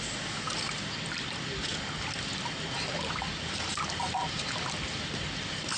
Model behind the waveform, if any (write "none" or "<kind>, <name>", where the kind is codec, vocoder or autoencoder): none